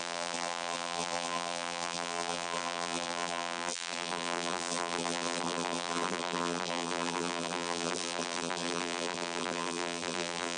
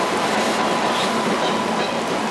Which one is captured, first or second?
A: second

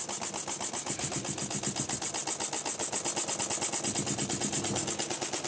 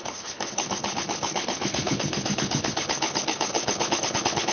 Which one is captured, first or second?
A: first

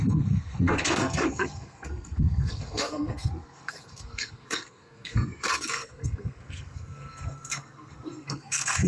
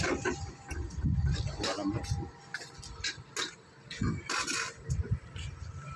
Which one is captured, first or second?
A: second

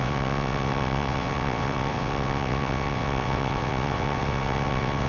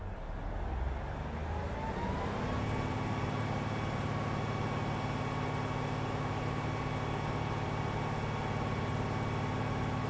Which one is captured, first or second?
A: second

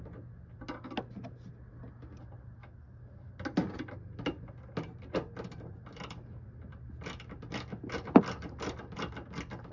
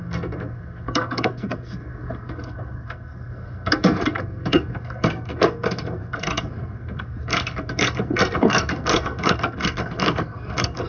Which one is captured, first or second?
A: first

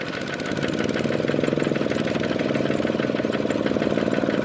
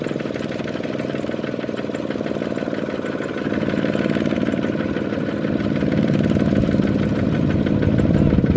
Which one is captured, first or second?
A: first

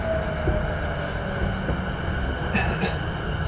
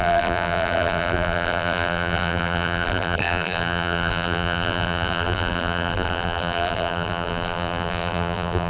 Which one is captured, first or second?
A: first